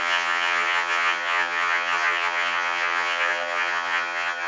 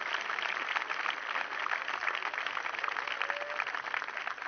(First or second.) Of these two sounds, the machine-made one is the first